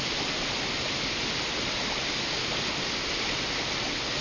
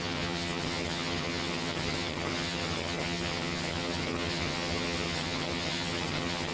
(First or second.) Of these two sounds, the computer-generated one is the second